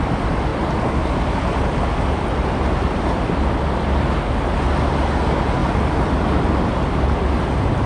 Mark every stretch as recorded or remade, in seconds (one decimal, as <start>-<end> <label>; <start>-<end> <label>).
0.0-7.9 recorded